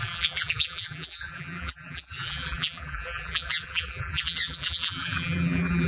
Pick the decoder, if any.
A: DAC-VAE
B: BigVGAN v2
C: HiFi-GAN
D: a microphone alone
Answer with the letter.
B